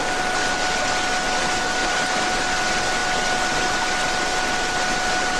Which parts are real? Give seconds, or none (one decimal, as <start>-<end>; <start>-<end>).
0.0-1.8; 2.4-5.4